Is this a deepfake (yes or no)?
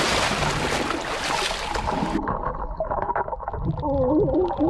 no